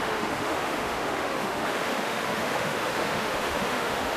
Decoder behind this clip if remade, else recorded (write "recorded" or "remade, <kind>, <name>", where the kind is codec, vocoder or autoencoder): remade, autoencoder, DAC-VAE